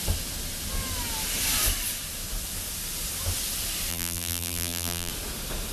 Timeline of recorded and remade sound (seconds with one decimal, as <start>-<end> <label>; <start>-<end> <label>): 0.0-3.9 recorded; 3.9-5.1 remade; 5.1-5.7 recorded